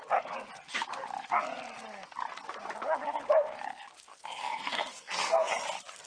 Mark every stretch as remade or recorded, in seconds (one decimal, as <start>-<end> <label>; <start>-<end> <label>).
0.0-4.1 recorded; 4.1-5.5 remade; 5.5-6.1 recorded